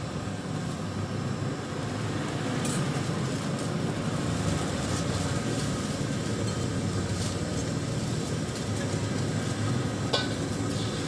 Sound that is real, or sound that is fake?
real